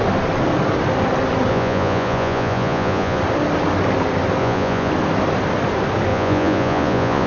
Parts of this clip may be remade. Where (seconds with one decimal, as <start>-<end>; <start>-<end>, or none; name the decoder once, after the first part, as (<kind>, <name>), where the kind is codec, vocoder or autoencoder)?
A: 1.5-3.2 (vocoder, Vocos); 4.4-4.9; 6.1-7.3